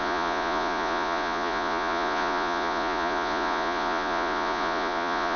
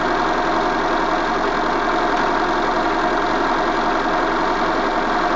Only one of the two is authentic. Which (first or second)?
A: second